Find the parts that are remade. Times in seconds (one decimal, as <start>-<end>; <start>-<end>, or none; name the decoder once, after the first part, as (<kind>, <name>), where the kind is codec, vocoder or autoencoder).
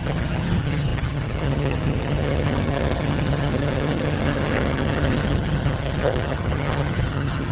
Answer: 0.0-7.5 (vocoder, HiFi-GAN)